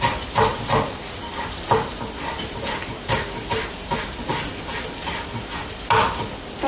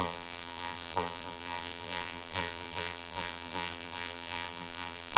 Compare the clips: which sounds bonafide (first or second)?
first